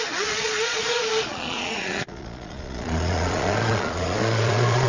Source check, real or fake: fake